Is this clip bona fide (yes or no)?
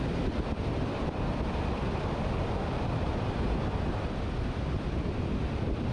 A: no